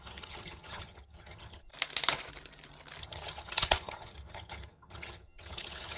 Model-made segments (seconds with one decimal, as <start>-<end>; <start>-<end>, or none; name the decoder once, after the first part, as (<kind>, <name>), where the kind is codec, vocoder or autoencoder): 0.0-1.7 (vocoder, HiFi-GAN); 3.0-6.0